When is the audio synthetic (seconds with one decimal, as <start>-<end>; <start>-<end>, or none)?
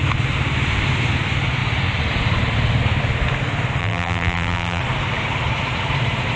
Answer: 3.8-4.8